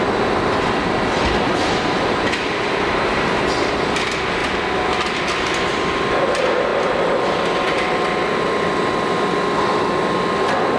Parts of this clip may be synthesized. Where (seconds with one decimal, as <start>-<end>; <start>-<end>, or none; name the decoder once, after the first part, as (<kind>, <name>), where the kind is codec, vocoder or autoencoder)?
none